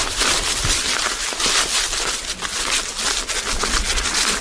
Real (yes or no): yes